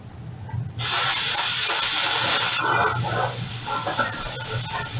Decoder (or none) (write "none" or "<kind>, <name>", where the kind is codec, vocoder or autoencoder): vocoder, BigVGAN v2